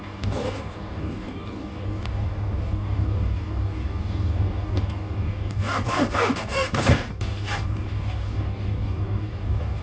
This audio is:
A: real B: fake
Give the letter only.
B